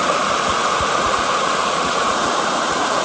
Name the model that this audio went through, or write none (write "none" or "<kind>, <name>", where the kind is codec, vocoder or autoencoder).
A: vocoder, Vocos